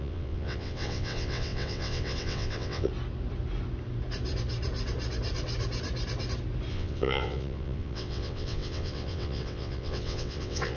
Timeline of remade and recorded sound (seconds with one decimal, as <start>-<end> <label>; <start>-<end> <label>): 0.0-2.9 remade; 2.9-6.7 recorded; 6.7-10.8 remade